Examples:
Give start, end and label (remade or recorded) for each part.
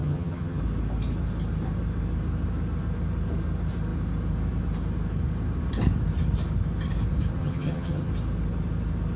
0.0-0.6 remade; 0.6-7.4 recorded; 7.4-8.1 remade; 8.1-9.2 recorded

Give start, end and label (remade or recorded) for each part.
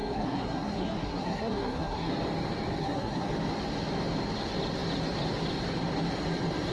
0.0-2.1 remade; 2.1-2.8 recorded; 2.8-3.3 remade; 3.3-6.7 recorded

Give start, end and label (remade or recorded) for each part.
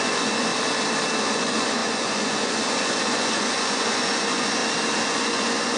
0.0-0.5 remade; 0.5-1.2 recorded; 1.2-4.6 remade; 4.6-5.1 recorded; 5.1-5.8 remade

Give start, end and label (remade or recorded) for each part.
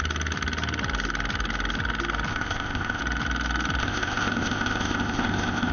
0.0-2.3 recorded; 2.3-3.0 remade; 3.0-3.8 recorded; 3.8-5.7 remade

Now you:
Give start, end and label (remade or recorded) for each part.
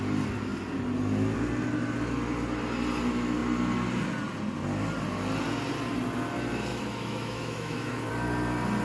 0.0-6.7 recorded; 6.7-8.1 remade; 8.1-8.8 recorded